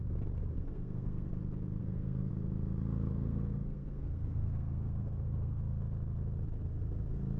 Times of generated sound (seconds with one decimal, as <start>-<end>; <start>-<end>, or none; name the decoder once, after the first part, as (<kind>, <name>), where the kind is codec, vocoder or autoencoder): 0.6-1.3 (codec, SNAC); 1.8-2.3; 3.1-5.6